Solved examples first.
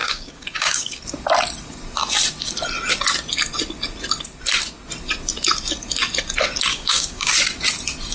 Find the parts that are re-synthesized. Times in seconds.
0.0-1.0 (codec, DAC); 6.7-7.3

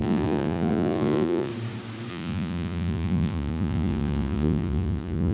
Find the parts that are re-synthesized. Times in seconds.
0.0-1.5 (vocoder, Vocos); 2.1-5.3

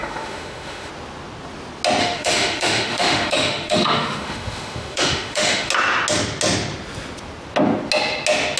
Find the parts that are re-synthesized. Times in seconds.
0.0-0.9 (autoencoder, DAC-VAE); 2.0-5.7